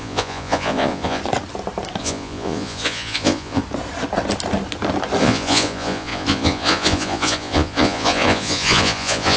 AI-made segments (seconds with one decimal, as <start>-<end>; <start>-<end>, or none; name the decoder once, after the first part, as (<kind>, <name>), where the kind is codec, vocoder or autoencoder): 0.0-1.2 (vocoder, Vocos); 2.0-3.6; 5.2-9.4